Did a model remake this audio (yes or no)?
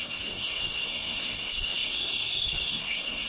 yes